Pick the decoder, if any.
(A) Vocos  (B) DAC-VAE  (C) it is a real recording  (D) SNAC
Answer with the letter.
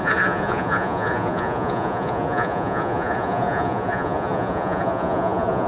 A